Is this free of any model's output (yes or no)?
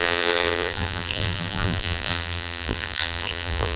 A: no